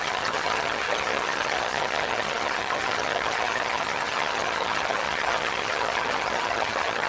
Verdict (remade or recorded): remade